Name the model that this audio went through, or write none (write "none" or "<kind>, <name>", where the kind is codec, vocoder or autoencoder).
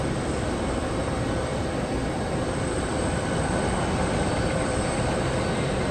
none